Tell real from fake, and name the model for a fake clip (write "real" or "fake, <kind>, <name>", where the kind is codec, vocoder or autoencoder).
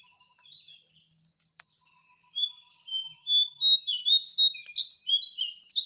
real